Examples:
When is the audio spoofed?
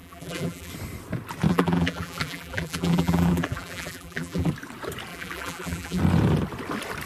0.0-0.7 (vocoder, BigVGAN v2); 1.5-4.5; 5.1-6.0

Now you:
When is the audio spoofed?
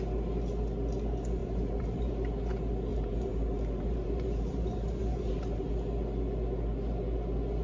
1.4-2.1 (vocoder, BigVGAN v2); 2.9-5.7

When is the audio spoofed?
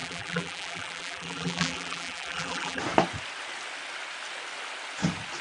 0.0-2.8 (vocoder, BigVGAN v2)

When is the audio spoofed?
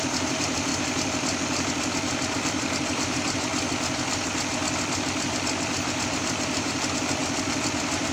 0.0-0.7 (vocoder, BigVGAN v2); 2.3-3.5; 6.0-7.2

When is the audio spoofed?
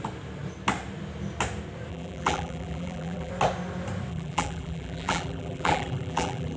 1.9-3.3 (vocoder, BigVGAN v2); 4.1-6.6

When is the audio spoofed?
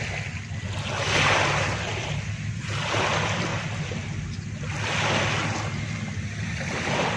none